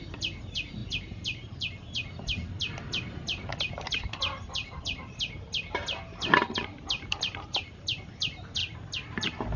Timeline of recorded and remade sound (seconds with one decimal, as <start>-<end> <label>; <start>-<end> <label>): 0.0-8.6 remade; 8.6-9.1 recorded; 9.1-9.6 remade